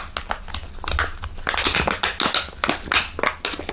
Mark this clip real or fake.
real